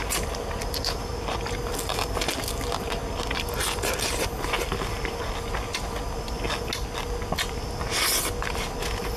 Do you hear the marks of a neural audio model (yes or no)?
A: no